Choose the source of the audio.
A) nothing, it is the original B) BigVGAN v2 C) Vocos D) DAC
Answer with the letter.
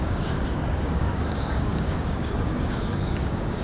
D